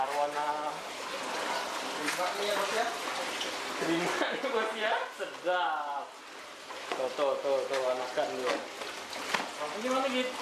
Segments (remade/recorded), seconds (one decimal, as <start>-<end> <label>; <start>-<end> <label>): 0.0-10.4 recorded